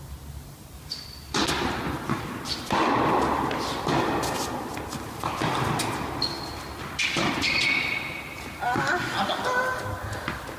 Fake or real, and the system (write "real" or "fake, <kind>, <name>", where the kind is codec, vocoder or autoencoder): real